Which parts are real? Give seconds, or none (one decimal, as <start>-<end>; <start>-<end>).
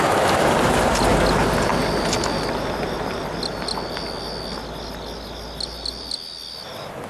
0.0-7.1